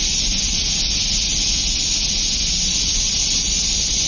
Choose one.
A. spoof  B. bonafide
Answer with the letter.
B